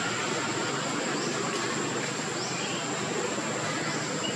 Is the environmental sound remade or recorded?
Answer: recorded